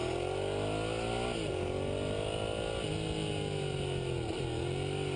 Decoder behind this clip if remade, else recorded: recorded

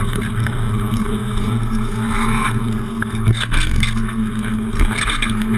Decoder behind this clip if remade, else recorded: remade, codec, SNAC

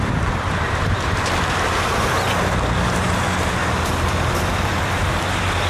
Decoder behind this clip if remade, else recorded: recorded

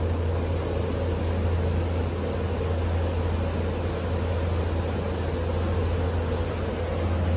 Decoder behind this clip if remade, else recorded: recorded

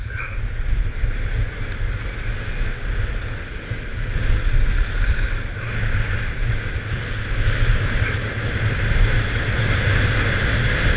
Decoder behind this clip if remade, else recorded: recorded